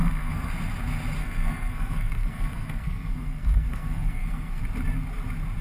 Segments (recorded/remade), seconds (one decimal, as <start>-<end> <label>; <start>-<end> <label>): 0.0-0.5 remade; 0.5-1.2 recorded; 1.2-4.6 remade; 4.6-5.6 recorded